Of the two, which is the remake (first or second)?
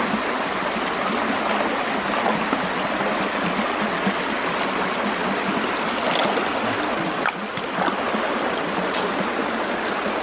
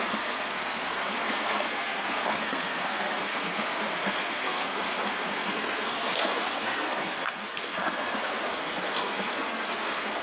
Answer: second